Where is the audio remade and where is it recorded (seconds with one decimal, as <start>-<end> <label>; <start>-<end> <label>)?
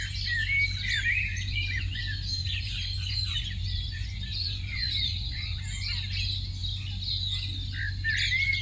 0.0-1.3 recorded; 1.3-2.0 remade; 2.0-2.4 recorded; 2.4-5.6 remade; 5.6-8.6 recorded